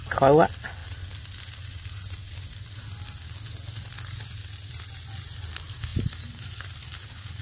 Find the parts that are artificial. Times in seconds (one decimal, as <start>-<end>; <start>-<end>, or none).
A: none